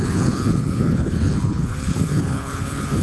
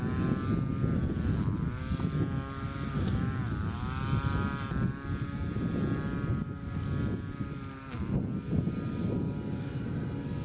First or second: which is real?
second